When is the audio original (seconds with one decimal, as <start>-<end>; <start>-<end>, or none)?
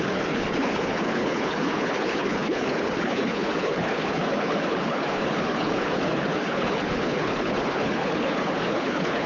none